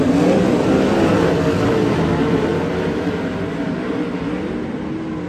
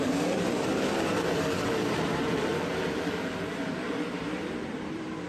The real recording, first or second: first